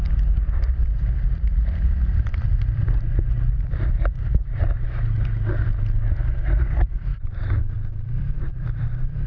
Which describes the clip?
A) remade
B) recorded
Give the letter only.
A